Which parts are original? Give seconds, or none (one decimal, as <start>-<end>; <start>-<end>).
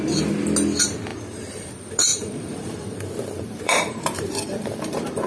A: 0.0-1.1; 1.7-2.1